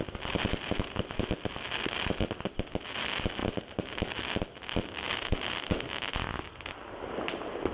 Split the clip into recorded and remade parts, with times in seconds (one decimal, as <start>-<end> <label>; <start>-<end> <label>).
0.0-7.7 recorded